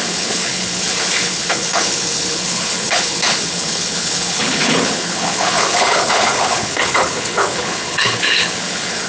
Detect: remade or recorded remade